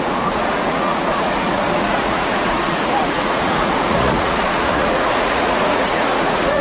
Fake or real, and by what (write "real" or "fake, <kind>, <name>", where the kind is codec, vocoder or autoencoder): fake, vocoder, Vocos